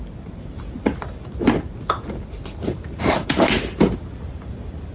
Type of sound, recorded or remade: recorded